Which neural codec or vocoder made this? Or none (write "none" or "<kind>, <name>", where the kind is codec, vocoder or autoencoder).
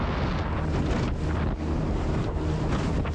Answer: none